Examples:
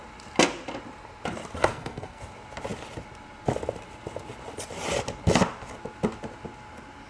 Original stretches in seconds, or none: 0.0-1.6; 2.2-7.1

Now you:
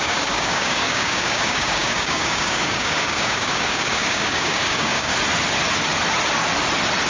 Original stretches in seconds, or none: 5.1-7.1

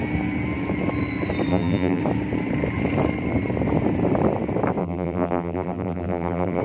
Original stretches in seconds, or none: 0.0-1.5; 2.0-4.8

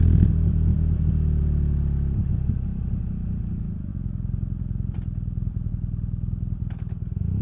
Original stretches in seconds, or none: 0.0-7.4

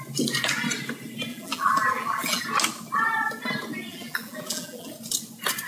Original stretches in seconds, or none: 0.0-1.3; 2.4-3.9; 4.9-5.7

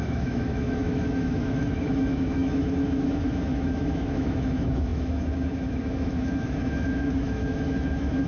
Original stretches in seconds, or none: none

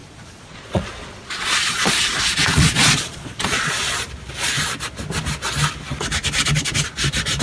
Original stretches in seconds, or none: 3.9-7.4